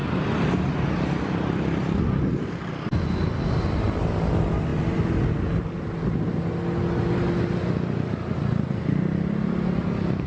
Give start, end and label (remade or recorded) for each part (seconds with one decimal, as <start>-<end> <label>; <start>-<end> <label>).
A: 0.0-10.3 recorded